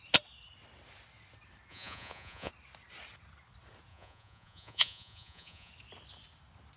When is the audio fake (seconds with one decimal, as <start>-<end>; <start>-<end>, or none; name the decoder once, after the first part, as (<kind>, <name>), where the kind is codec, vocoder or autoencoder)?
1.7-2.5 (vocoder, Vocos); 3.9-5.7